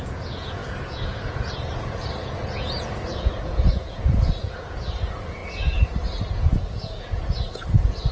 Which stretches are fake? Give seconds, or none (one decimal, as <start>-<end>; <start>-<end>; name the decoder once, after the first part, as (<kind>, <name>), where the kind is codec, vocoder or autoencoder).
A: 0.0-5.4 (vocoder, Vocos); 6.3-8.1